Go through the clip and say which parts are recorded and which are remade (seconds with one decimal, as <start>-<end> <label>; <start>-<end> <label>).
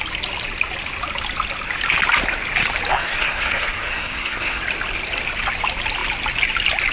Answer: 0.0-2.9 recorded; 2.9-4.6 remade; 4.6-6.9 recorded